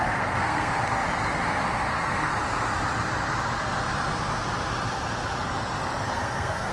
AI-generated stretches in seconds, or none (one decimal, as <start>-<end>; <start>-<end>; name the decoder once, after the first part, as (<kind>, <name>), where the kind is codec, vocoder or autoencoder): 0.0-1.0 (codec, SNAC); 1.9-2.3; 6.1-6.7